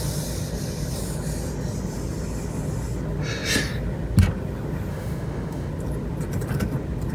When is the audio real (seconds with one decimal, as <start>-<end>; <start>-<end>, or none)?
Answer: 0.0-4.9; 5.7-7.1